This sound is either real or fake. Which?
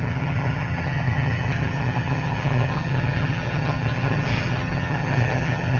fake